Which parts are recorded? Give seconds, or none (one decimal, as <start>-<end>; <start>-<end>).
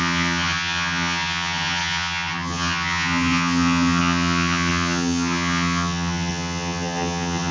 none